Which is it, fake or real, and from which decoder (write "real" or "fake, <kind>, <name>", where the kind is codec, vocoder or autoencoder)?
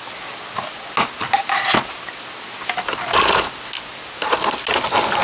real